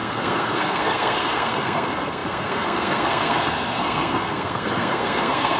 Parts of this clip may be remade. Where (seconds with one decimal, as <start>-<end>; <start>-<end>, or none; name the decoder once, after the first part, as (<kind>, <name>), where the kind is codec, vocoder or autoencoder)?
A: 0.0-5.6 (codec, SNAC)

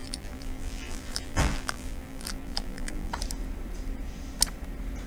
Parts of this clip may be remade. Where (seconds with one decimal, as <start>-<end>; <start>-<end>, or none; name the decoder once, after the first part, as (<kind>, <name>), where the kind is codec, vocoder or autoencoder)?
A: 0.0-3.1 (vocoder, BigVGAN v2)

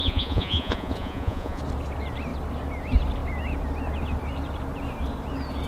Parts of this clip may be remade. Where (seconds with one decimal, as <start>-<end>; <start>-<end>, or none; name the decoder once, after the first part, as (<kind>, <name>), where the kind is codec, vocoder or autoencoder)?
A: 0.0-1.6 (vocoder, Vocos)

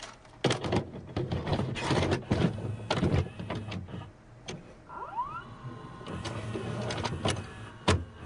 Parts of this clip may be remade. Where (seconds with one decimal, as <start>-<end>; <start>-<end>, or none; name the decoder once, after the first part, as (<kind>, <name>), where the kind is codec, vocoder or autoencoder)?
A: none

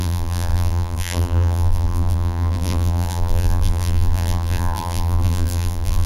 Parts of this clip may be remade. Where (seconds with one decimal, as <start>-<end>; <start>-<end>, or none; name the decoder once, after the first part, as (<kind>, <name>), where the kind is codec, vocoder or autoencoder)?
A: 0.0-6.1 (vocoder, BigVGAN v2)